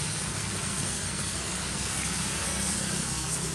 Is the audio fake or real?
fake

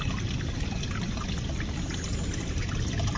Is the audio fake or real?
real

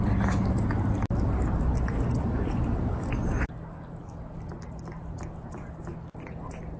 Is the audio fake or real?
real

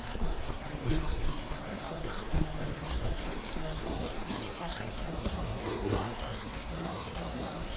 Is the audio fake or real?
fake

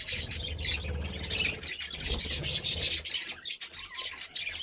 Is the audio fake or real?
real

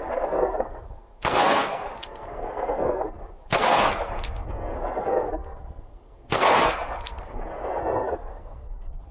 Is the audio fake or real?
fake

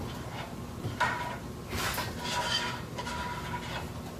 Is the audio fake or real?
real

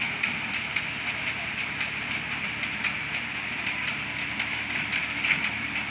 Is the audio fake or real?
real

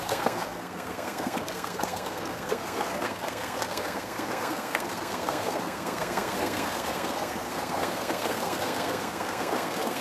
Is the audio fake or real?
fake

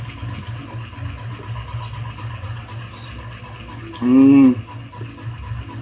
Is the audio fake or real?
real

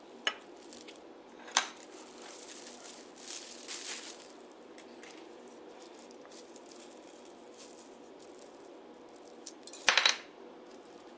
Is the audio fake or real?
real